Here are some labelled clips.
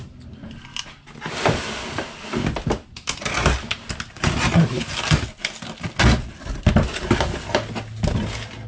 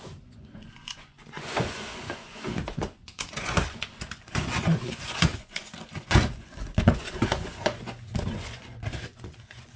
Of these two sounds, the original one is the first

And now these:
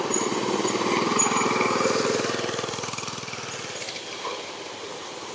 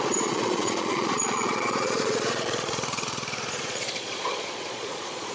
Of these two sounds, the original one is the first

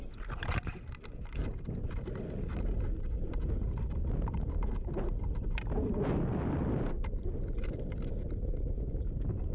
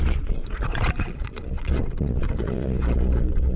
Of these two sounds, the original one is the first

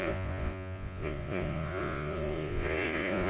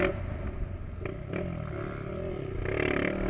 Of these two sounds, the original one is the second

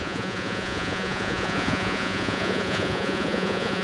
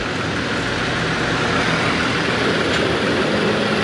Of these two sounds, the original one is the second